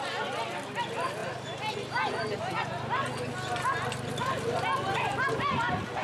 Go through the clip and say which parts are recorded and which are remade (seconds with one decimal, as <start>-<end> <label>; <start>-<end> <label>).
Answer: 0.0-6.0 recorded